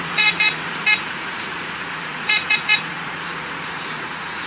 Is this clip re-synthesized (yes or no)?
yes